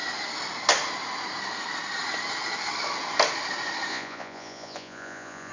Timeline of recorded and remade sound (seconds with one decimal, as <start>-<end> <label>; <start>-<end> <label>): 0.0-3.9 recorded; 3.9-5.5 remade